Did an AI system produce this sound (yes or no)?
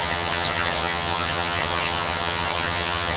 yes